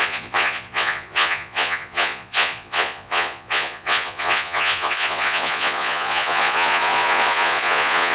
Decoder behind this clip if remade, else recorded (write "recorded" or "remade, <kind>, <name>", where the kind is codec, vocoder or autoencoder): remade, vocoder, Vocos